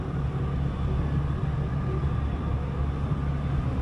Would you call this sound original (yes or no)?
yes